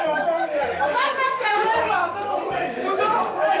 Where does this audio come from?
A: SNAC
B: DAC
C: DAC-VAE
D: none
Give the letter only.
B